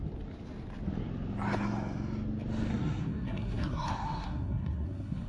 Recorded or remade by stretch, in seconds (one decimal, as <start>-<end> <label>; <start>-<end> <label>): 0.0-2.7 recorded; 2.7-5.3 remade